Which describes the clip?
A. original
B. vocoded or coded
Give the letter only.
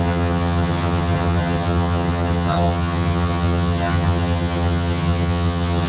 B